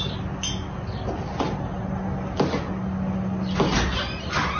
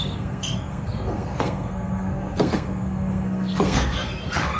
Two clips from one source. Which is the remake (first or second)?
second